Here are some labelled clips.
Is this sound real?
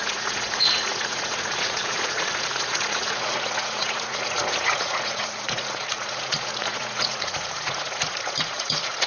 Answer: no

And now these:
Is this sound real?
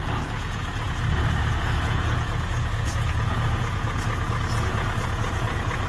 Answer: no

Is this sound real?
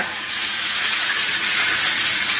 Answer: no